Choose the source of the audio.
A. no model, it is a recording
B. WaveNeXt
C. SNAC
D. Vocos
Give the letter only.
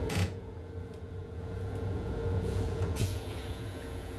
D